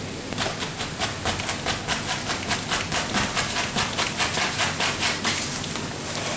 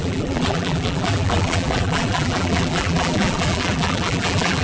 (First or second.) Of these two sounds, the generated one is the second